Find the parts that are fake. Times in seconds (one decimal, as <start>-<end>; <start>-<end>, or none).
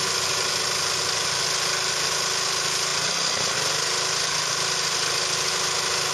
none